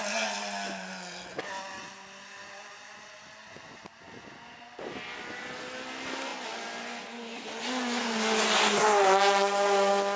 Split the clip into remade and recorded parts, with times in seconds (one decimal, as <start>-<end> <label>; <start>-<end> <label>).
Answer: 0.0-10.2 recorded